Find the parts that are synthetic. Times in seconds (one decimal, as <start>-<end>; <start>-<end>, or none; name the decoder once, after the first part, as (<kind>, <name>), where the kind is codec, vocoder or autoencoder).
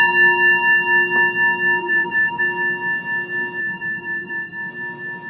1.8-2.4 (autoencoder, DAC-VAE); 3.6-4.7